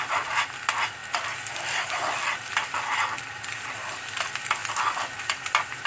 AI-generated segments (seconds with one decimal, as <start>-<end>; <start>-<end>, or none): 0.0-4.6; 5.2-5.9